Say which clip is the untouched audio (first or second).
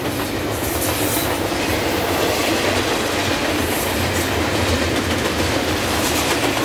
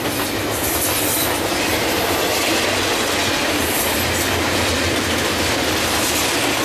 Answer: second